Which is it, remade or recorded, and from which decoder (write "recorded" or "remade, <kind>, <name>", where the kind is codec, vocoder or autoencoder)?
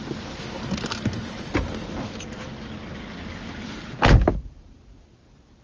recorded